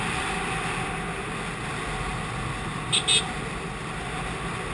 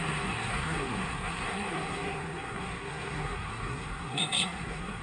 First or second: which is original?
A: first